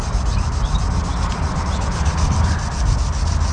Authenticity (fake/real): real